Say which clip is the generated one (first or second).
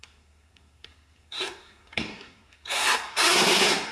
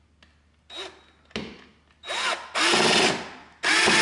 first